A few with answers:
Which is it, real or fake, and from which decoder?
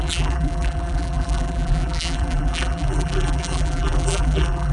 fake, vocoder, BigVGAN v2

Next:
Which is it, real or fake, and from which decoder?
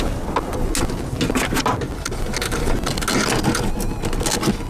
real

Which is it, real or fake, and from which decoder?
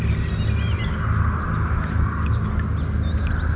real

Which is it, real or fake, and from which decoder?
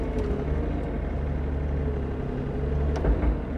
real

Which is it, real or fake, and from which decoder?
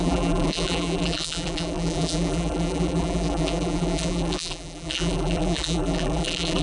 fake, vocoder, BigVGAN v2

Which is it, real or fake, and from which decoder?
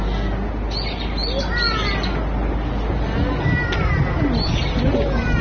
real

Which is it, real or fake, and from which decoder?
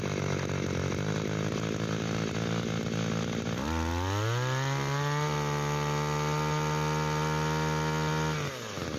real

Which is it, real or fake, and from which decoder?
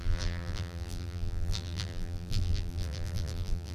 fake, vocoder, BigVGAN v2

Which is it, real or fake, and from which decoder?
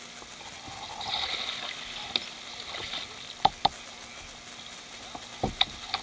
real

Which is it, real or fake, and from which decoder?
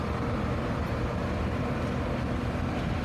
real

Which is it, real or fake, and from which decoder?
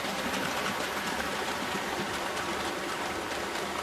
fake, vocoder, BigVGAN v2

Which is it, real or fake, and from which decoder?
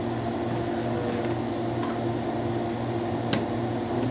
real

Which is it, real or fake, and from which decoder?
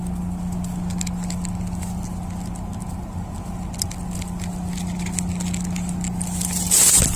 real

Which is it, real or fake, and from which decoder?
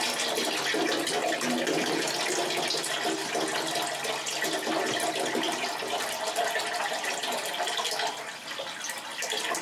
real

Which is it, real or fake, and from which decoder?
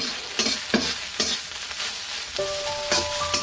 real